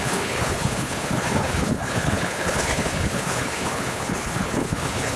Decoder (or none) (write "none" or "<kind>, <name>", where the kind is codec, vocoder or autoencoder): codec, HILCodec